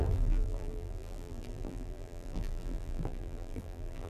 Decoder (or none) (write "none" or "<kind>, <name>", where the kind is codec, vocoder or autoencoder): vocoder, BigVGAN v2